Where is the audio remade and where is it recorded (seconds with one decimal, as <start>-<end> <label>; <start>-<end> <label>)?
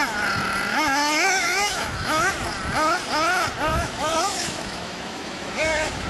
0.0-0.7 recorded; 0.7-2.3 remade; 2.3-3.7 recorded; 3.7-6.1 remade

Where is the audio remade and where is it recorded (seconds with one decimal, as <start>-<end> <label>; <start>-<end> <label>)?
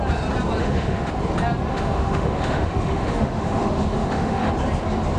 0.0-0.6 recorded; 0.6-1.1 remade; 1.1-1.7 recorded; 1.7-4.5 remade; 4.5-5.2 recorded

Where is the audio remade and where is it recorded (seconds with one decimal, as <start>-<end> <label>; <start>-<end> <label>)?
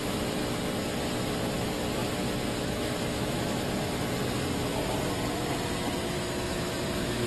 0.0-0.4 remade; 0.4-1.1 recorded; 1.1-4.7 remade; 4.7-6.2 recorded; 6.2-7.3 remade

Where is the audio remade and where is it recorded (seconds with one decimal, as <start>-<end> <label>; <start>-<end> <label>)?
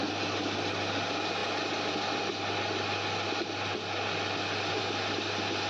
0.0-5.7 recorded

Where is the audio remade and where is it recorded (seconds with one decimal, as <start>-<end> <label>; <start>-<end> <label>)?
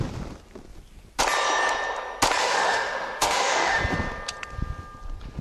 0.0-2.4 recorded; 2.4-3.8 remade; 3.8-5.4 recorded